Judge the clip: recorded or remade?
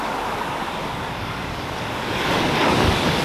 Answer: remade